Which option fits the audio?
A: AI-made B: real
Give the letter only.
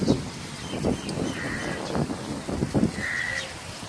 B